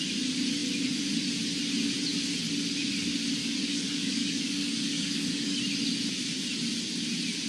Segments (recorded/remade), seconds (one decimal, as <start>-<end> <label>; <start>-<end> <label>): 0.0-3.4 recorded; 3.4-5.6 remade; 5.6-7.5 recorded